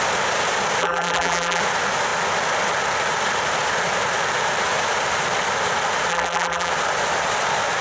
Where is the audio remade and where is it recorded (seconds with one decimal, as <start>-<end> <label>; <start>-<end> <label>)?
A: 0.0-0.8 recorded; 0.8-1.6 remade; 1.6-6.1 recorded; 6.1-6.7 remade; 6.7-7.8 recorded